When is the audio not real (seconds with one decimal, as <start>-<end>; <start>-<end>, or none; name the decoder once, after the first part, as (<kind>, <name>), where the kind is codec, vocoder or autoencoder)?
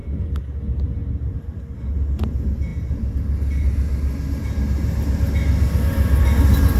none